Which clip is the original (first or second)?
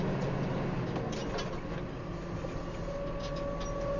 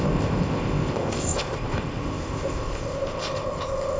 first